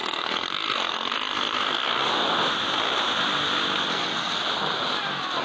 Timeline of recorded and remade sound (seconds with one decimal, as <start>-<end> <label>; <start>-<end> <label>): 0.0-1.9 remade; 1.9-3.9 recorded; 3.9-4.4 remade; 4.4-5.4 recorded